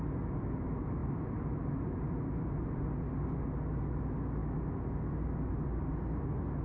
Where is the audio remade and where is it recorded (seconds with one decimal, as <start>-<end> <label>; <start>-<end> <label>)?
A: 0.0-6.6 recorded